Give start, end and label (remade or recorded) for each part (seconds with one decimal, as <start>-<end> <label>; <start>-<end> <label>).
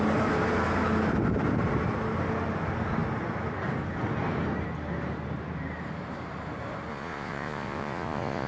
0.0-6.9 recorded; 6.9-8.5 remade